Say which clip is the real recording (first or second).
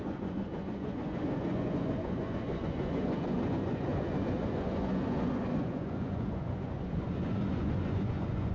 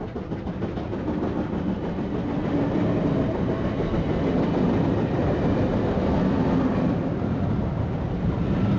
second